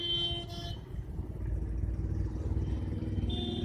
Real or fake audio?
real